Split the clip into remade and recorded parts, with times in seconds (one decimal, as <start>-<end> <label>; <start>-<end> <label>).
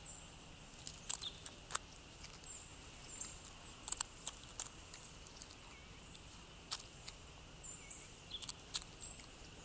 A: 0.0-9.6 recorded